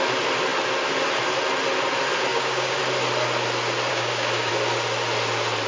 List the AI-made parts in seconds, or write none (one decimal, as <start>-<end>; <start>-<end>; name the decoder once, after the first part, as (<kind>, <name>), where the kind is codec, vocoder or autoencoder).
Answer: 2.3-2.8 (codec, DAC); 3.9-4.5